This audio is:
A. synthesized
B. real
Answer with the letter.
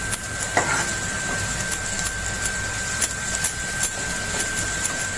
B